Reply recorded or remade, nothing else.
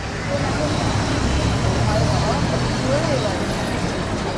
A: recorded